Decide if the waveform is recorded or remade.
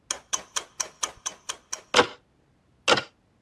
recorded